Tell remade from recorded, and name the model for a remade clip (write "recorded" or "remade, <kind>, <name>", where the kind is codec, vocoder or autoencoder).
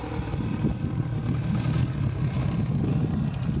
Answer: recorded